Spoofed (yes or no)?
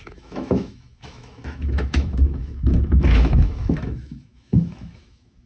yes